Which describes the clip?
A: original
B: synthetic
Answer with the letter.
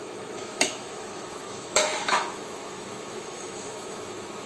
B